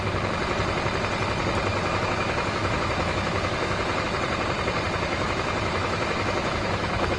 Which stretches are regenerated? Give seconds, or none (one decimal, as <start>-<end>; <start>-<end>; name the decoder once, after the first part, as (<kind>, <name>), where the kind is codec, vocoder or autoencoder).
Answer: 1.7-4.1 (autoencoder, DAC-VAE); 5.1-7.2